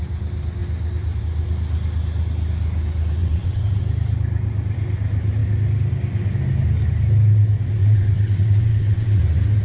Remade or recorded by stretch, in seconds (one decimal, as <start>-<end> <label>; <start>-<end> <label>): 0.0-3.2 recorded; 3.2-3.8 remade; 3.8-7.8 recorded; 7.8-9.2 remade; 9.2-9.6 recorded